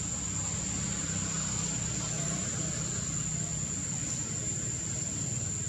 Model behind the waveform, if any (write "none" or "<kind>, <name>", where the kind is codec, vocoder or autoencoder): none